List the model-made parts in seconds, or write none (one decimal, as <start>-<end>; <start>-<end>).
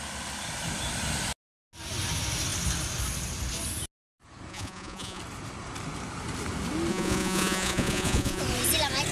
4.5-5.2; 6.9-8.4